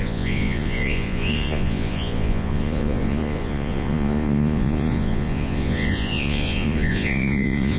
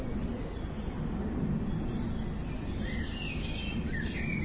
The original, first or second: second